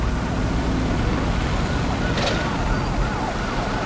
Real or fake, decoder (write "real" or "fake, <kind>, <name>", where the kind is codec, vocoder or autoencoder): real